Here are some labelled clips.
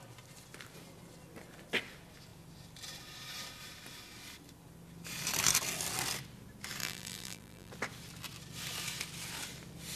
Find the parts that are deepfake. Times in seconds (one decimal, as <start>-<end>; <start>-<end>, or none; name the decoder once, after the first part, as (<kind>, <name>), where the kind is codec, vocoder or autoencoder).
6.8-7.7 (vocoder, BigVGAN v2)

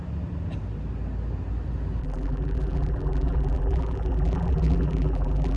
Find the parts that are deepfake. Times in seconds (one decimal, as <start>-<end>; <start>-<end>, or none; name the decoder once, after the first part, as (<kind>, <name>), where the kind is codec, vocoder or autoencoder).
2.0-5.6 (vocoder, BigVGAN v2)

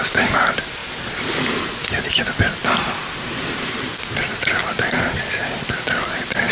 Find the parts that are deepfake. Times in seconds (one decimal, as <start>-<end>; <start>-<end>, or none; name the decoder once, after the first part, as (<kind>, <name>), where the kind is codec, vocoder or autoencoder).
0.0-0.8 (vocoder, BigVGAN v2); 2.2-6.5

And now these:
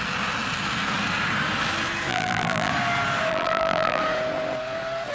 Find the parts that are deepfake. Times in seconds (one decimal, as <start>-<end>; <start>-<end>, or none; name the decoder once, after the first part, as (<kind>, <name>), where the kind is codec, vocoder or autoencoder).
2.1-2.7 (vocoder, BigVGAN v2); 3.3-4.0

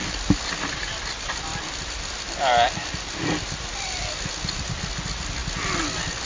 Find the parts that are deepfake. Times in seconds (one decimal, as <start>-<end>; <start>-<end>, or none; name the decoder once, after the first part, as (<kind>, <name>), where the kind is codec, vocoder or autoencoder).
0.0-1.0 (vocoder, BigVGAN v2); 1.5-4.3

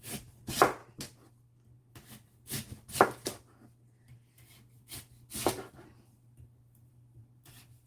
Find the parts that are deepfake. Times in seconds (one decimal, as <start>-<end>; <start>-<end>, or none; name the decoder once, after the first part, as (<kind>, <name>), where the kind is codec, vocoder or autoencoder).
0.0-0.8 (vocoder, BigVGAN v2); 1.8-3.3; 6.9-7.9

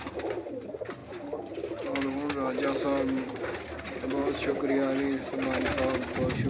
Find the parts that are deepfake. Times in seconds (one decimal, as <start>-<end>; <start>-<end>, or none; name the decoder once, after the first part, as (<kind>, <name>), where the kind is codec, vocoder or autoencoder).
4.2-4.7 (vocoder, BigVGAN v2)